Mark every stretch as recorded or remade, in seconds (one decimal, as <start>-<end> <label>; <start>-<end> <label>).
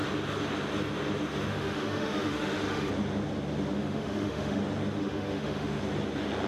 0.0-1.5 recorded; 1.5-2.9 remade; 2.9-3.8 recorded; 3.8-4.6 remade; 4.6-5.0 recorded; 5.0-5.8 remade; 5.8-6.5 recorded